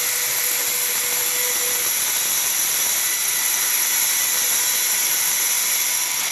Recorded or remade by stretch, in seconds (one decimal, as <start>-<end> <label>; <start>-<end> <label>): 0.0-6.3 recorded